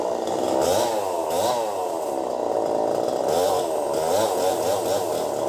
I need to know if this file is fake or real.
real